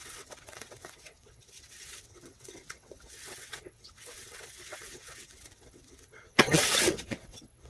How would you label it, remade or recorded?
remade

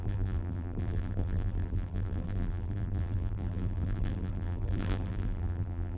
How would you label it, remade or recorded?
remade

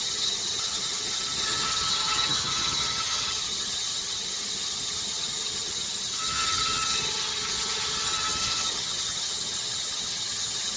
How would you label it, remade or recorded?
remade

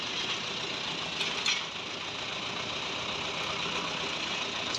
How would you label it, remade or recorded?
recorded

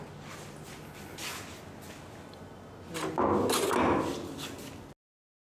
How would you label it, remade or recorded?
recorded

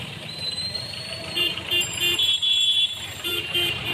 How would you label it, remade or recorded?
remade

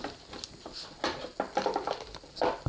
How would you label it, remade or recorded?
recorded